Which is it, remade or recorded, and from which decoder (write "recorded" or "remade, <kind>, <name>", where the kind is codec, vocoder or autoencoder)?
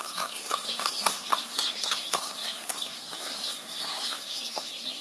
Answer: remade, codec, SNAC